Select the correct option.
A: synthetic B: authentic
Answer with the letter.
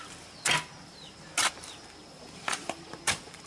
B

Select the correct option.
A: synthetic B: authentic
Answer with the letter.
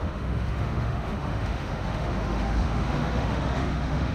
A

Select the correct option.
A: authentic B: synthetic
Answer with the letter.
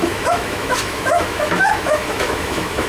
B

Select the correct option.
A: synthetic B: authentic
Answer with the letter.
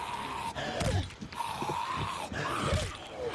B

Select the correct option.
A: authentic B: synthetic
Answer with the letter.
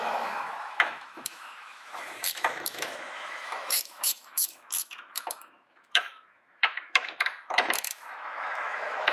B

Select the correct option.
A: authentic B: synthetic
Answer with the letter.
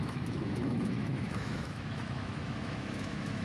B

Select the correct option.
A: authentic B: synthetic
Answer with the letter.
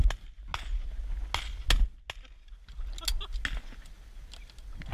A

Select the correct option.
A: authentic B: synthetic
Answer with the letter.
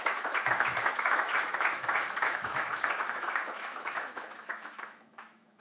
B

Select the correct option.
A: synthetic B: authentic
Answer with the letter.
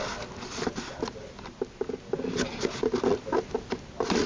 B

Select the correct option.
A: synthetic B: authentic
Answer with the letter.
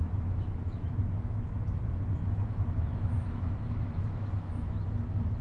A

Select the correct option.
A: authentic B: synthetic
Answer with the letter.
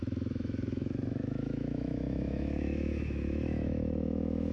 B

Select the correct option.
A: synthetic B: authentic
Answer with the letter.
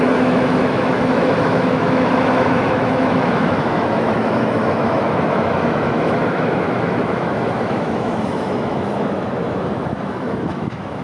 A